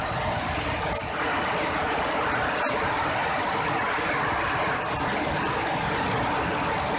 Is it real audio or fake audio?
real